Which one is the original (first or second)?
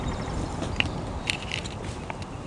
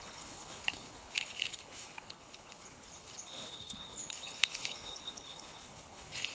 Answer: first